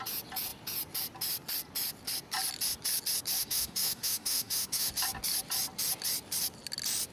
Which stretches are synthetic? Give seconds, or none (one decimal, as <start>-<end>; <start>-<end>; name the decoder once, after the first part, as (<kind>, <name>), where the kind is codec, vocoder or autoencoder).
3.4-4.9 (autoencoder, DAC-VAE)